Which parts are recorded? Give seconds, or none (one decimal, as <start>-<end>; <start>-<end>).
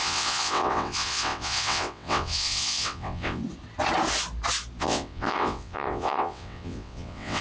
3.4-4.8